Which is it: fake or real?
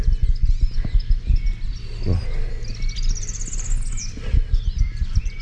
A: real